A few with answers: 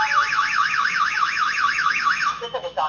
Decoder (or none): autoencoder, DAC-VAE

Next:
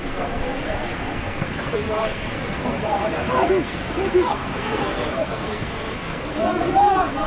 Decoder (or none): codec, SNAC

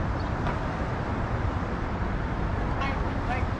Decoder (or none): vocoder, BigVGAN v2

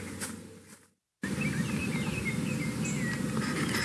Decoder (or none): none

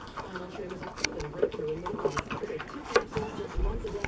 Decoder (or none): none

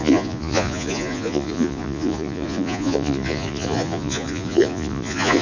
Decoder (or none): vocoder, Vocos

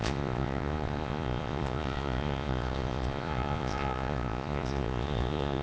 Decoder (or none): vocoder, Vocos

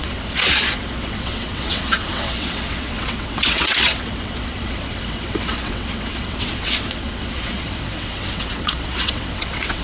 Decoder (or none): vocoder, WaveNeXt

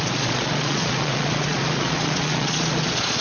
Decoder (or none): vocoder, Vocos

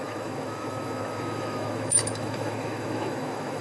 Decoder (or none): autoencoder, DAC-VAE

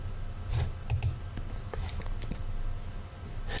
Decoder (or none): none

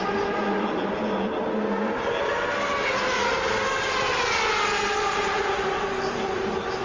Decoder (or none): none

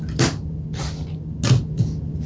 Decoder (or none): none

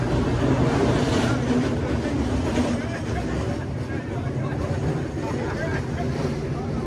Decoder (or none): none